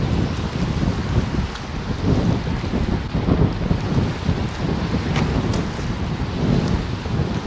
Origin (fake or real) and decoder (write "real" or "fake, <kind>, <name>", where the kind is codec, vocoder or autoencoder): real